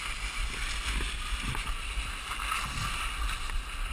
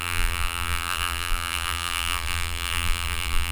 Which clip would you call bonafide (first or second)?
first